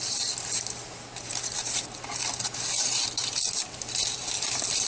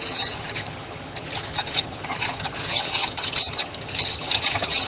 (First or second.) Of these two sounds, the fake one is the second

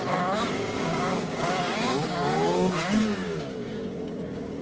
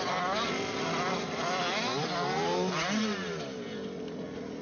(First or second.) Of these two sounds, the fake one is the first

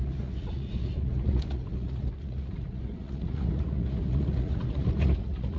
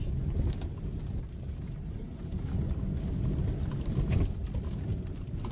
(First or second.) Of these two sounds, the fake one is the first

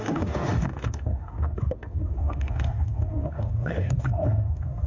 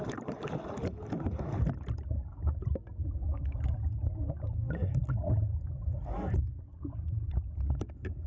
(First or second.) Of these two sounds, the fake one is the first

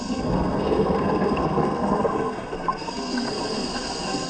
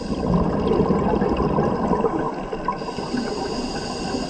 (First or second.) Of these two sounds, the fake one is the first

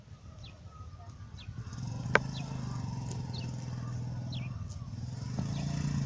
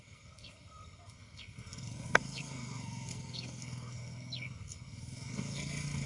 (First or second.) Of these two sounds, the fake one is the second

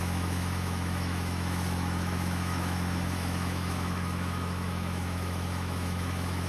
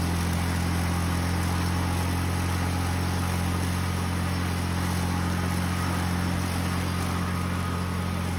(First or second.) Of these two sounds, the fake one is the first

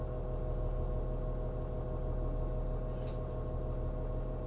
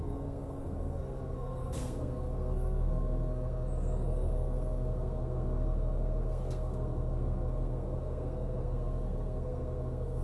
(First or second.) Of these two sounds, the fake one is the second